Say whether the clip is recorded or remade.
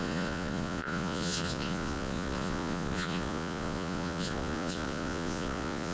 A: remade